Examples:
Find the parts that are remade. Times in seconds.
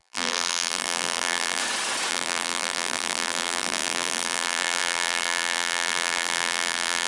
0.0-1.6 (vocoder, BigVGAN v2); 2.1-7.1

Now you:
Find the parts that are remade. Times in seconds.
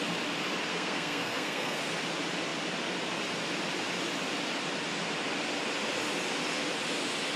0.7-1.8 (codec, SNAC)